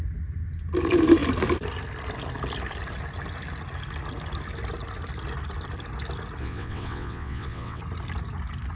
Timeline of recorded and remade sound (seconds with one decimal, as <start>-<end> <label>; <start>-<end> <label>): 0.0-6.4 recorded; 6.4-7.8 remade; 7.8-8.8 recorded